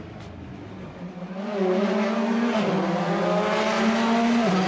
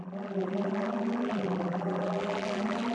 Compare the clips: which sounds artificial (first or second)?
second